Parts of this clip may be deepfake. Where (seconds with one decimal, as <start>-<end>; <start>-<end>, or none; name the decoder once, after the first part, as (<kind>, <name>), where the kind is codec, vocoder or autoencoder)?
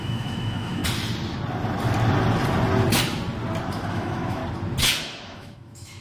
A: 0.0-0.8 (autoencoder, DAC-VAE); 3.9-4.4; 5.0-6.0